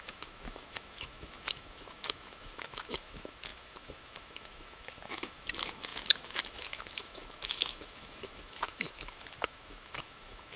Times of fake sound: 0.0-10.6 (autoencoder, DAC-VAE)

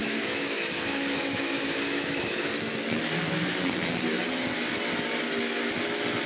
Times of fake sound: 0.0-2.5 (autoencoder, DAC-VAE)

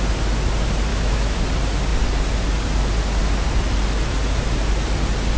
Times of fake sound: 0.9-1.4 (autoencoder, DAC-VAE)

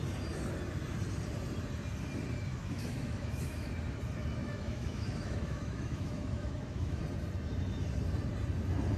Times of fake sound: 2.5-3.7 (autoencoder, DAC-VAE); 4.4-7.0